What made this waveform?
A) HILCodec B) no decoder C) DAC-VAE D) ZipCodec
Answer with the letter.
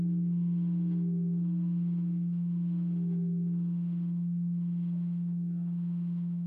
C